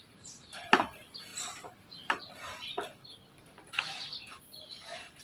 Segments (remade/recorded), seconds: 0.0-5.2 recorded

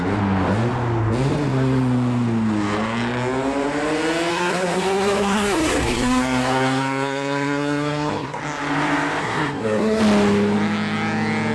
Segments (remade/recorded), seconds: 0.0-4.3 recorded; 4.3-8.4 remade; 8.4-9.2 recorded; 9.2-10.0 remade; 10.0-11.5 recorded

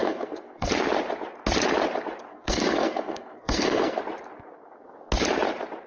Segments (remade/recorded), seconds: 0.0-0.7 remade; 0.7-2.3 recorded; 2.3-4.0 remade; 4.0-5.9 recorded

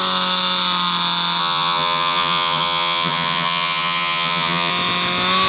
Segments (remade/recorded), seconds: 0.0-1.4 recorded; 1.4-4.7 remade; 4.7-5.5 recorded

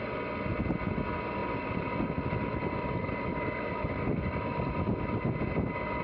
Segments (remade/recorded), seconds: 0.0-1.4 recorded; 1.4-4.7 remade; 4.7-6.0 recorded

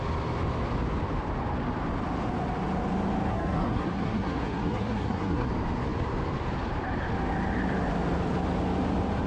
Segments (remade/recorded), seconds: 0.0-3.3 recorded; 3.3-5.5 remade; 5.5-9.3 recorded